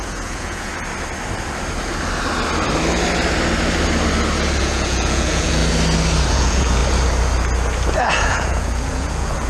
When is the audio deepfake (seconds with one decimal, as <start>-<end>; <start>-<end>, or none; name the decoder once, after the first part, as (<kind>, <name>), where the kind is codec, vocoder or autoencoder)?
0.0-0.7 (vocoder, Vocos); 4.6-5.6; 6.3-6.8; 8.0-9.5